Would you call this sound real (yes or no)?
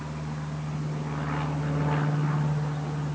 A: yes